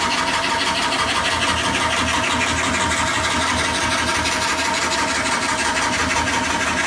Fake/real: real